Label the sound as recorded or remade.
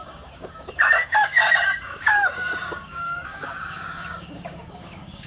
remade